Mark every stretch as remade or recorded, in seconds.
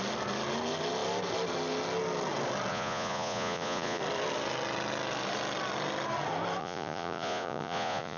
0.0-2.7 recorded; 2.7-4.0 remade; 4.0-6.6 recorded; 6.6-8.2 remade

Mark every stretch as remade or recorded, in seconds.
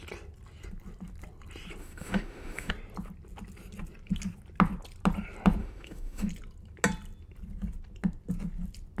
0.0-1.8 recorded; 1.8-2.7 remade; 2.7-5.6 recorded; 5.6-6.3 remade; 6.3-9.0 recorded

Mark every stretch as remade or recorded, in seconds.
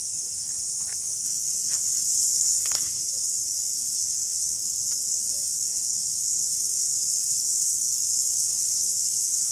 0.0-0.5 remade; 0.5-1.0 recorded; 1.0-9.5 remade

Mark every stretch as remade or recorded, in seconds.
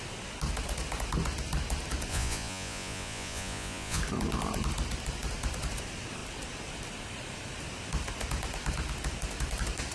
0.0-2.1 recorded; 2.1-4.0 remade; 4.0-9.9 recorded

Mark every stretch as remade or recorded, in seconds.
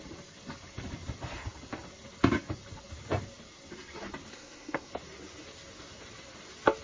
0.0-4.3 recorded; 4.3-4.9 remade; 4.9-6.8 recorded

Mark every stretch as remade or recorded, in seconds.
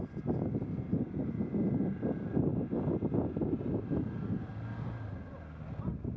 0.0-6.2 recorded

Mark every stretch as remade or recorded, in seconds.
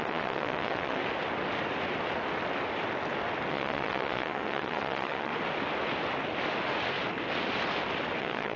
0.0-1.0 remade; 1.0-3.5 recorded; 3.5-5.3 remade; 5.3-8.2 recorded; 8.2-8.6 remade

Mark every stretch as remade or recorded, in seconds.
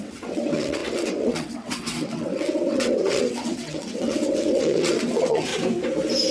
0.0-5.5 remade; 5.5-6.3 recorded